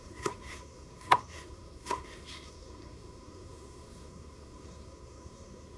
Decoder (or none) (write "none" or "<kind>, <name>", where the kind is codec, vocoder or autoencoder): codec, SNAC